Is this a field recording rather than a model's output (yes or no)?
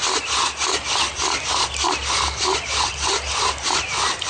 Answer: yes